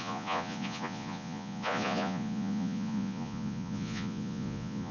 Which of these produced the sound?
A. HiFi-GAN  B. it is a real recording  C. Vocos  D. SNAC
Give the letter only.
C